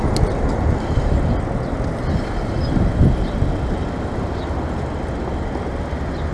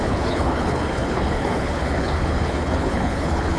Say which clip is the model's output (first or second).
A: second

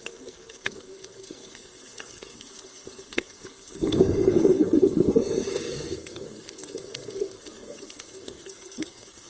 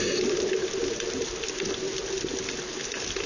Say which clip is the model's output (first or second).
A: first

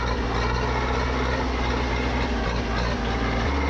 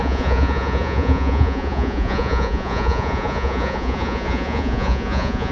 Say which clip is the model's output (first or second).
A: second